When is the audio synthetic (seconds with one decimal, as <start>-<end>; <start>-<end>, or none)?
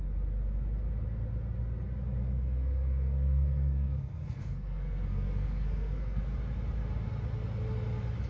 2.2-6.2